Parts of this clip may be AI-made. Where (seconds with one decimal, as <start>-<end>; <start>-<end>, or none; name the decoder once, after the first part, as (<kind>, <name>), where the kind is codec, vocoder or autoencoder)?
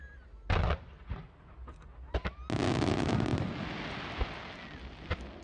none